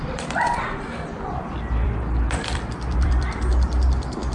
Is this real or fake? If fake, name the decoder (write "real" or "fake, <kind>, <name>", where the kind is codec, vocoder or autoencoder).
fake, vocoder, BigVGAN v2